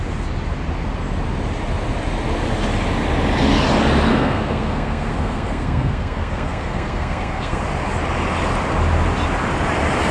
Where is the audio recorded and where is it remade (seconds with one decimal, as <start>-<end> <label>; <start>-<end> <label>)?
0.0-4.1 recorded; 4.1-7.6 remade; 7.6-10.1 recorded

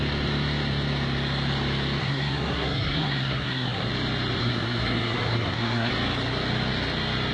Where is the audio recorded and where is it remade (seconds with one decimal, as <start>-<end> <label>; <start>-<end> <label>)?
0.0-2.0 recorded; 2.0-3.9 remade; 3.9-4.4 recorded; 4.4-5.9 remade; 5.9-7.3 recorded

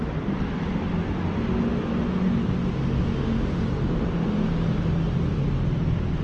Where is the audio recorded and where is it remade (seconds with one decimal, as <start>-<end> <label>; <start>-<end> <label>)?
0.0-6.2 recorded

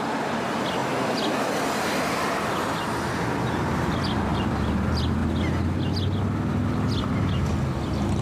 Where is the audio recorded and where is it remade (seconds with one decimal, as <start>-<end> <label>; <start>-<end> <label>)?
0.0-8.2 recorded

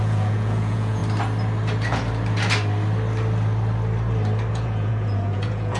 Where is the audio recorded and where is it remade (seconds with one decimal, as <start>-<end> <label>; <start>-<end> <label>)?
0.0-1.0 remade; 1.0-4.5 recorded; 4.5-5.8 remade

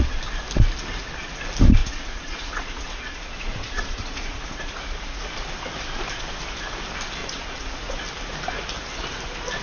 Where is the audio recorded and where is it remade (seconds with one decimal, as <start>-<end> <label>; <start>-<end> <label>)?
0.0-1.8 recorded; 1.8-5.2 remade; 5.2-7.2 recorded; 7.2-8.0 remade; 8.0-9.6 recorded